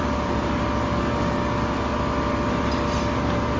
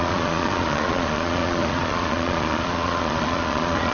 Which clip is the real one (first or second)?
first